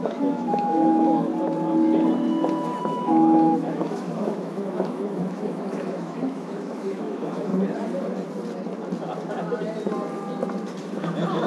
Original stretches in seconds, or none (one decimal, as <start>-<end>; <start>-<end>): 1.3-2.8; 7.5-10.8